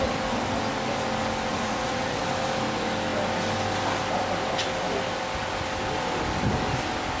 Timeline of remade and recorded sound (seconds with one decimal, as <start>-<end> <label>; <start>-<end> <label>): 0.0-1.5 recorded; 1.5-2.2 remade; 2.2-7.2 recorded